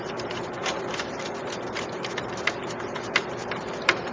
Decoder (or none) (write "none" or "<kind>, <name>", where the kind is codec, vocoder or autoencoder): vocoder, BigVGAN v2